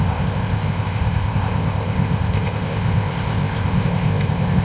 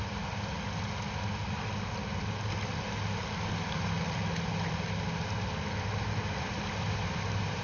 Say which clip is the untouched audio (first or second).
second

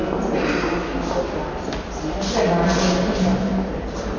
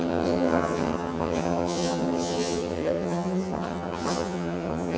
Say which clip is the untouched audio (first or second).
first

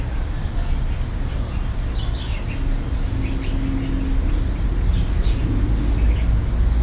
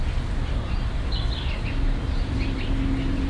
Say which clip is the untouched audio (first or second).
first